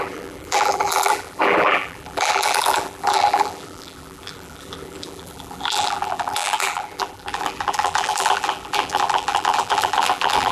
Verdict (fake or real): fake